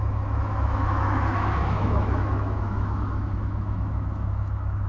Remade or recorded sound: remade